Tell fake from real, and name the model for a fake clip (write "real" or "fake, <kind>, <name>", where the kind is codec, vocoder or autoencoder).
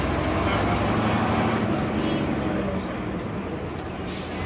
real